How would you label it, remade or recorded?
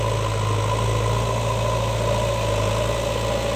recorded